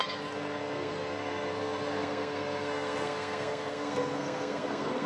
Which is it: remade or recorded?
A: remade